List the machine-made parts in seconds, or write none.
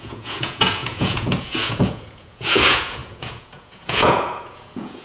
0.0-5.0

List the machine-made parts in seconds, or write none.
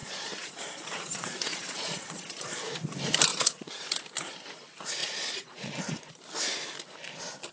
0.0-2.6; 3.3-4.0; 5.0-6.1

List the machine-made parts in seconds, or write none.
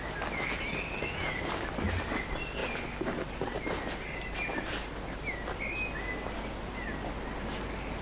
none